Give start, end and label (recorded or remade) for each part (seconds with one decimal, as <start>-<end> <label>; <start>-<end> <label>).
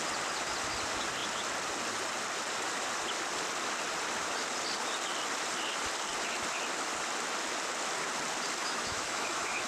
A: 0.0-8.6 recorded; 8.6-9.7 remade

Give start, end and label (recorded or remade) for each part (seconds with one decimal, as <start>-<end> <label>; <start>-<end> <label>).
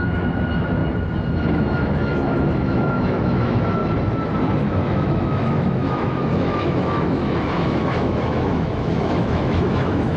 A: 0.0-0.8 remade; 0.8-1.5 recorded; 1.5-3.8 remade; 3.8-4.6 recorded; 4.6-10.2 remade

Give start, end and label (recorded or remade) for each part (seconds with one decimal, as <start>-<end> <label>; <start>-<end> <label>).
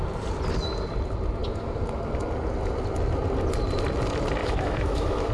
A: 0.0-4.4 recorded; 4.4-5.3 remade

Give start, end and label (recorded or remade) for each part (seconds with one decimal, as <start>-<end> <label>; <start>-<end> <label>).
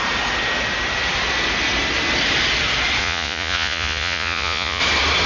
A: 0.0-3.0 recorded; 3.0-4.8 remade; 4.8-5.3 recorded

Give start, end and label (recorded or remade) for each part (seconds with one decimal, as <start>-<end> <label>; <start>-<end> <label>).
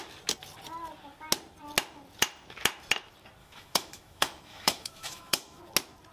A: 0.0-3.4 recorded; 3.4-5.6 remade; 5.6-6.1 recorded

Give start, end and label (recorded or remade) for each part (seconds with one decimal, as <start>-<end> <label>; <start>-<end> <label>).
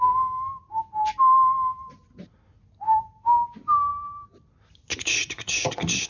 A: 0.0-6.1 recorded